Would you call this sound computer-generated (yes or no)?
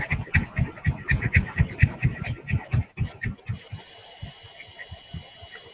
no